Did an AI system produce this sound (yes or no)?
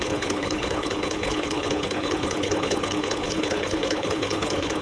yes